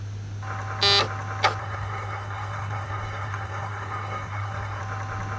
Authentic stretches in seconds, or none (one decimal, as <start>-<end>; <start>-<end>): 0.0-1.6; 4.8-5.4